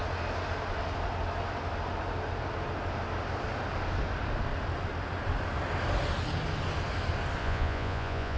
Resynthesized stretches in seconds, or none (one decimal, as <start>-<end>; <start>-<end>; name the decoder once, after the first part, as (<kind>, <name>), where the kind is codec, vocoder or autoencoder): 7.4-8.4 (vocoder, Vocos)